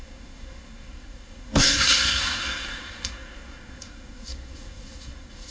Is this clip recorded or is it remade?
remade